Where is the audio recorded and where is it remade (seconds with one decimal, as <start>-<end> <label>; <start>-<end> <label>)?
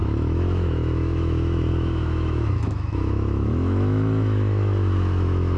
0.0-5.6 remade